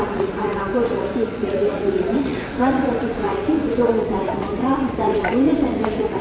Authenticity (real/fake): fake